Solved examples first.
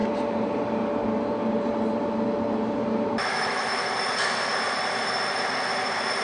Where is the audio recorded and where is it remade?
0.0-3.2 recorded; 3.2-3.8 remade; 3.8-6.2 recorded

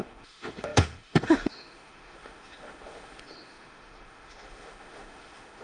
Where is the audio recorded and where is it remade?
0.0-5.6 remade

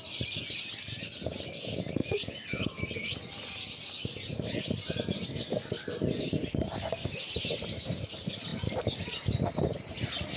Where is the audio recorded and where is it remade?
0.0-10.4 recorded

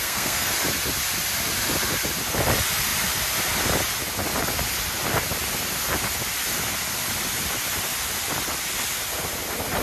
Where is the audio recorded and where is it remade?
0.0-0.5 remade; 0.5-9.8 recorded